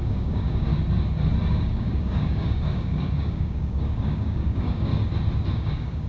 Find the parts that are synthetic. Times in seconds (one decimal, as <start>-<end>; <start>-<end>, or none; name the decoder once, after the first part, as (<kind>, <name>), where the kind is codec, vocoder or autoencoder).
0.0-0.7 (codec, DAC); 1.5-4.9; 5.5-6.1